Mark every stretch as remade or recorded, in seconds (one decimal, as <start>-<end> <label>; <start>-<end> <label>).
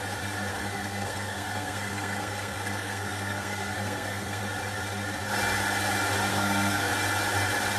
0.0-0.5 recorded; 0.5-4.4 remade; 4.4-6.3 recorded; 6.3-6.9 remade; 6.9-7.8 recorded